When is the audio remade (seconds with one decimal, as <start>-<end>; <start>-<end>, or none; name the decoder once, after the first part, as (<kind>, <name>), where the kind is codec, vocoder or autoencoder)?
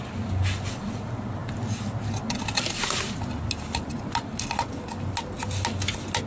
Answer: none